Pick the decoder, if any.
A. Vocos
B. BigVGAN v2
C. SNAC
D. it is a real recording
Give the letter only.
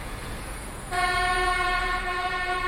A